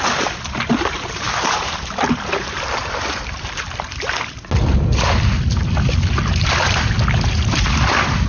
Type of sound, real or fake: real